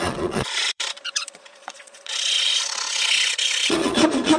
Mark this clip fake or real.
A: fake